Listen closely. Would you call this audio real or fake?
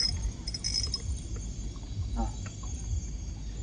real